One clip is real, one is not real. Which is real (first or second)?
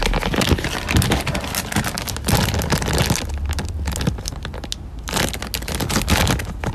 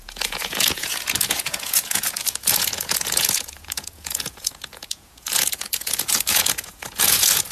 first